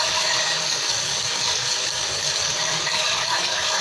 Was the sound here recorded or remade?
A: remade